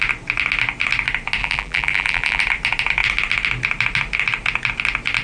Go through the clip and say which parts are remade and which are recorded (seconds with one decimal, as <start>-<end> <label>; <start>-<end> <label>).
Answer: 0.0-1.4 recorded; 1.4-2.4 remade; 2.4-5.2 recorded